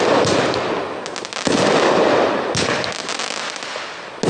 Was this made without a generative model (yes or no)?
yes